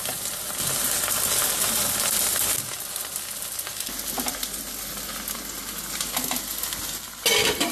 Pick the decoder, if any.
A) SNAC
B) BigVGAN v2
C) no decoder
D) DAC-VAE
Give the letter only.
C